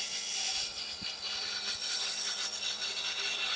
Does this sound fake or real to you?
real